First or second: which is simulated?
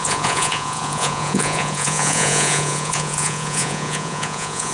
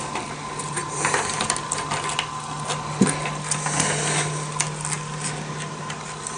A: first